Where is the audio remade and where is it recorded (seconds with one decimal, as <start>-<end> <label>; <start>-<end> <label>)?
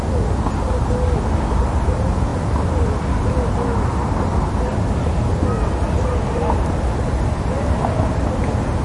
0.0-8.8 recorded